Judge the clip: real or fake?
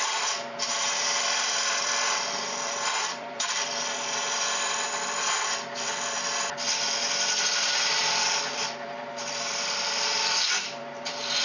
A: fake